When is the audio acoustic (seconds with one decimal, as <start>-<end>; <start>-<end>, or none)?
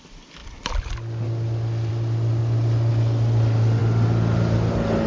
0.0-5.1